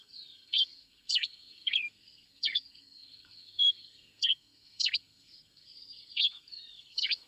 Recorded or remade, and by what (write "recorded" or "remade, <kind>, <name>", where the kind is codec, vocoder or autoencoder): remade, codec, SNAC